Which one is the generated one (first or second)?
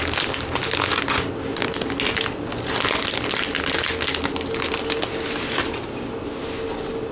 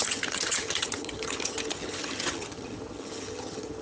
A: second